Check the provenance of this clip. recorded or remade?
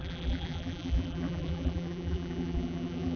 remade